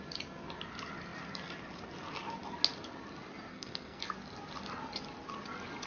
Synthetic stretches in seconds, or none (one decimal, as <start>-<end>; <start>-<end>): 3.5-4.0